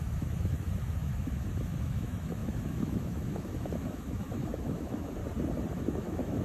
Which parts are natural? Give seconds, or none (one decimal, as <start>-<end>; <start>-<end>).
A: 5.2-5.7